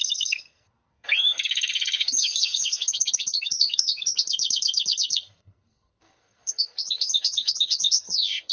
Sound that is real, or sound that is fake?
fake